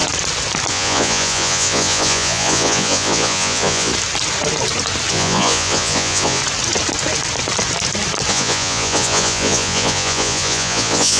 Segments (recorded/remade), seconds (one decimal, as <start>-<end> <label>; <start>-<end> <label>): 0.0-0.7 recorded; 0.7-3.9 remade; 3.9-5.1 recorded; 5.1-6.4 remade; 6.4-8.3 recorded; 8.3-11.2 remade